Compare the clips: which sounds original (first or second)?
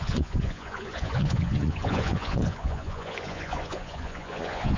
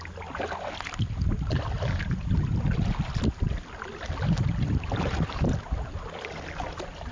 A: second